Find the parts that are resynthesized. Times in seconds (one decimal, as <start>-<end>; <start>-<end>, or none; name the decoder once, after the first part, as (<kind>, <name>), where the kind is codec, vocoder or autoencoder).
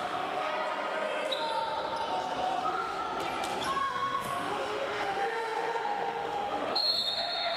0.0-0.5 (autoencoder, DAC-VAE); 2.6-3.0; 3.8-7.6